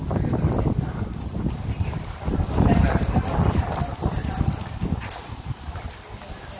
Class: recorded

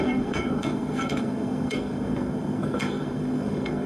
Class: remade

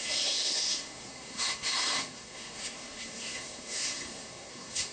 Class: remade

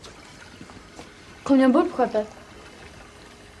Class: recorded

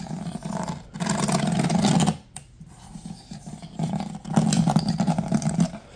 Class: recorded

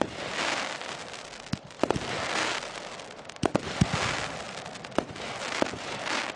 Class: recorded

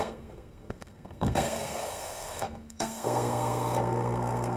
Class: remade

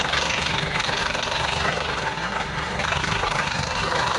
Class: remade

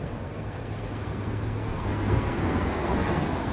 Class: remade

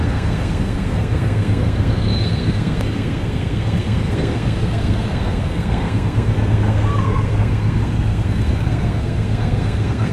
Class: remade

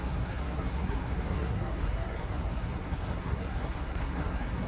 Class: remade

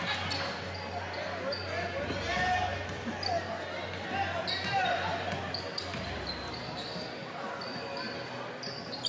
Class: recorded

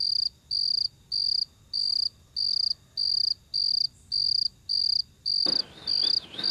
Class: recorded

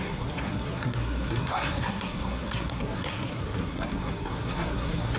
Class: remade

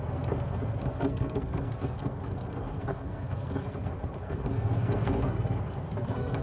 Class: remade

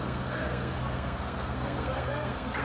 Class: remade